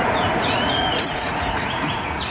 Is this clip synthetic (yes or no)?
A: yes